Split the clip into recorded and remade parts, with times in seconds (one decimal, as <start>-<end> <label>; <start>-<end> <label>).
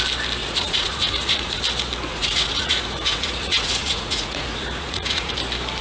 0.0-0.4 recorded; 0.4-1.6 remade; 1.6-2.1 recorded; 2.1-5.3 remade; 5.3-5.8 recorded